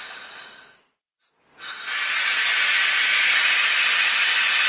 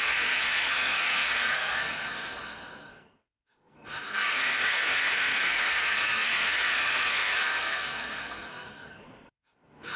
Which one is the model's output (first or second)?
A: second